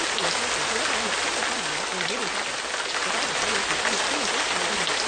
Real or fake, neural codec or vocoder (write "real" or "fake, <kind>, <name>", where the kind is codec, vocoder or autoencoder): real